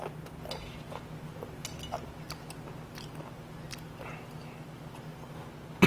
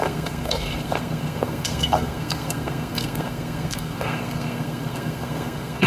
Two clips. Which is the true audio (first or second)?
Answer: first